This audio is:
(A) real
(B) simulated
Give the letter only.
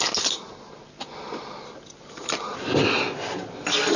A